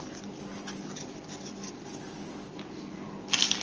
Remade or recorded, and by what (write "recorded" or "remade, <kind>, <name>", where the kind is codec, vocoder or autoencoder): recorded